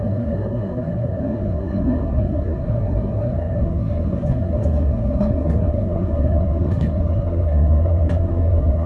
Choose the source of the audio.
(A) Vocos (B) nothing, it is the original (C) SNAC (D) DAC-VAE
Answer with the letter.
C